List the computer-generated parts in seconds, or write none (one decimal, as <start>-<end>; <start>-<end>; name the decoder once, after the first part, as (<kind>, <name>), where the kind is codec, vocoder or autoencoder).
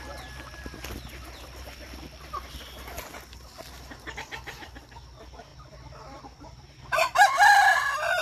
none